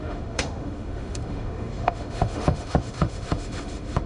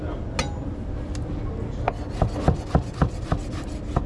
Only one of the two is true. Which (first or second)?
second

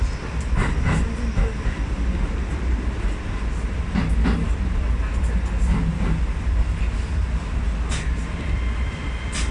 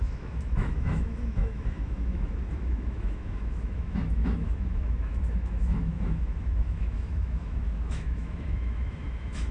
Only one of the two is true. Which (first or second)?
first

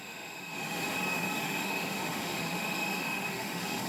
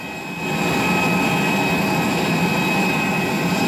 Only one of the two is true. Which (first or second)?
second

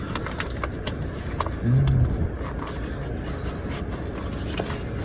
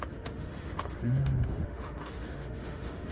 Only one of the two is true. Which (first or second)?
first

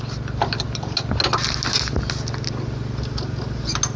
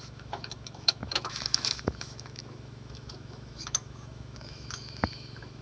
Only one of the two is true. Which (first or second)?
first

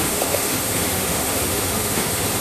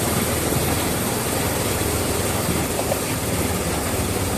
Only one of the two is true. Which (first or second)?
second